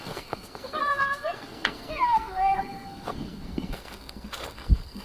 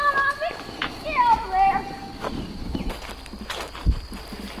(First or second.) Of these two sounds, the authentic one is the second